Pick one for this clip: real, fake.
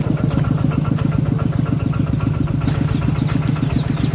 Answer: real